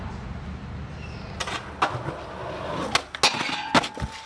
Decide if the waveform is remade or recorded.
recorded